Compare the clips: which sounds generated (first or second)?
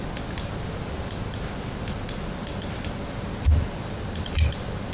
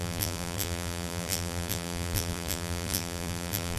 second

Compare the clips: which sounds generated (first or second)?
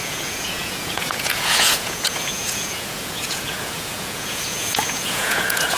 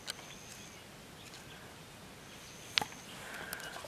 first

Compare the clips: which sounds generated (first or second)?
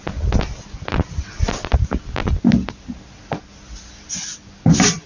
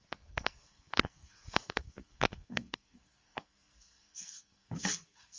second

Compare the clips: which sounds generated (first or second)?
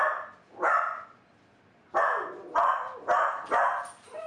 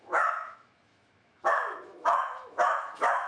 second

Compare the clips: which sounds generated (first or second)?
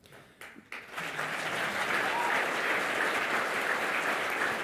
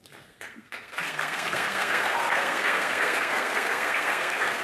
second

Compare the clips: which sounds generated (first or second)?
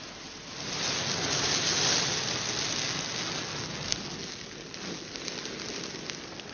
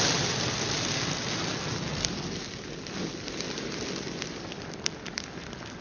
second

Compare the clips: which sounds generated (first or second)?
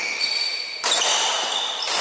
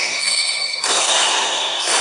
second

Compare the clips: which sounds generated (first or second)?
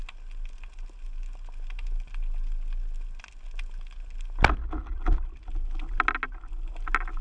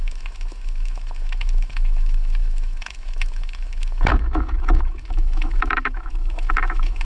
second